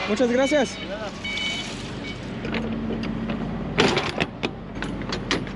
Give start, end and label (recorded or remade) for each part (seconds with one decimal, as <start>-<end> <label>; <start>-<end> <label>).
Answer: 0.0-1.9 remade; 1.9-5.6 recorded